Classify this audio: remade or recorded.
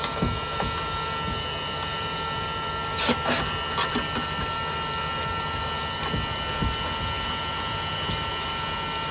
recorded